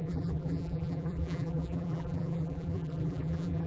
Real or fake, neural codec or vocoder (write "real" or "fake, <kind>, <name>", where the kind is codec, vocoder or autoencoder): fake, vocoder, BigVGAN v2